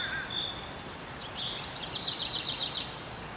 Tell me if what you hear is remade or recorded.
recorded